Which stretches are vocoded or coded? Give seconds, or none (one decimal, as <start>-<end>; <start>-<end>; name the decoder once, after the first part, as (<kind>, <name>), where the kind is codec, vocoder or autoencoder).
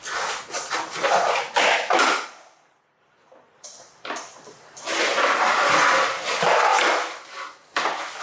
none